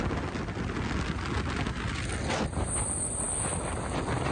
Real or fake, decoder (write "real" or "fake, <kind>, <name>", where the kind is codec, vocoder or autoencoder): real